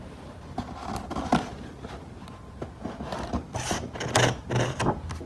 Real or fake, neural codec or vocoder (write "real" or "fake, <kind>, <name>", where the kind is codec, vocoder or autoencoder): real